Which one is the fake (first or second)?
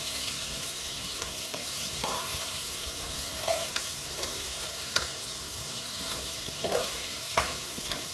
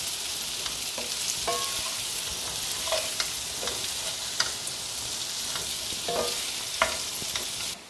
first